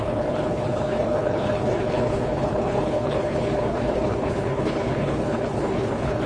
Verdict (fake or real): fake